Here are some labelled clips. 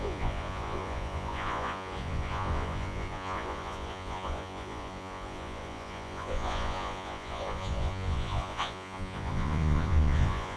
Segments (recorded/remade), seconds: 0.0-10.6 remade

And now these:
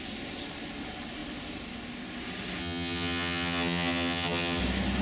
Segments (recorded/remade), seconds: 0.0-2.6 recorded; 2.6-4.6 remade; 4.6-5.0 recorded

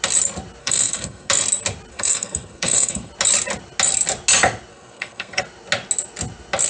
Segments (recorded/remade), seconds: 0.0-0.6 recorded; 0.6-1.3 remade; 1.3-1.9 recorded; 1.9-3.1 remade; 3.1-4.7 recorded; 4.7-5.4 remade; 5.4-6.7 recorded

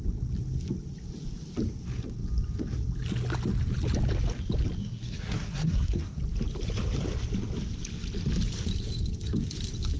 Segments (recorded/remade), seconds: 0.0-4.8 recorded; 4.8-6.2 remade; 6.2-10.0 recorded

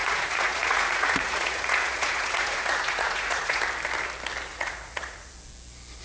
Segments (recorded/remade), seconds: 0.0-3.6 remade; 3.6-4.5 recorded; 4.5-5.3 remade; 5.3-6.0 recorded

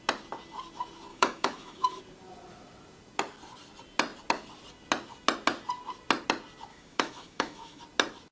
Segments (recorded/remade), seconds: 0.0-1.1 recorded; 1.1-2.0 remade; 2.0-6.7 recorded; 6.7-7.8 remade; 7.8-8.3 recorded